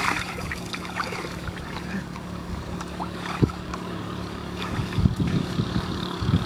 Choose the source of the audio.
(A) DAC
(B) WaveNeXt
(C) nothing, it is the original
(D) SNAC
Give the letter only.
A